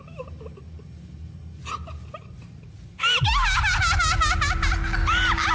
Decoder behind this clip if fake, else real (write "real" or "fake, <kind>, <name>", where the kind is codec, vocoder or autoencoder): real